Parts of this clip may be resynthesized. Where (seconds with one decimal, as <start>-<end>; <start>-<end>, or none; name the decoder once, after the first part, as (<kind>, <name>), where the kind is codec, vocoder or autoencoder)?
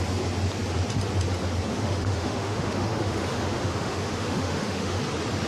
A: 1.7-5.0 (autoencoder, DAC-VAE)